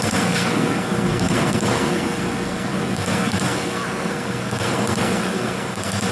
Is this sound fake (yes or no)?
yes